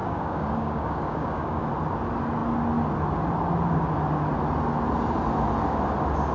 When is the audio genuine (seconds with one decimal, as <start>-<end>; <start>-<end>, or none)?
1.6-6.3